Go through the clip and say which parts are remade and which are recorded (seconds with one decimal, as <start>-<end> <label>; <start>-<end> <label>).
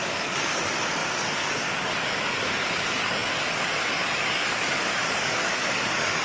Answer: 0.0-6.2 remade